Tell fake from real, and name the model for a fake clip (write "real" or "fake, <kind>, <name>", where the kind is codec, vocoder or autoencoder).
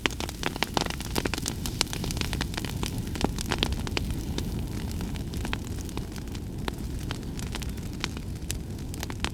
real